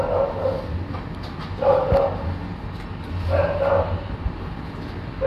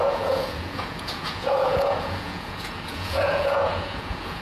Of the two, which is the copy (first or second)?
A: second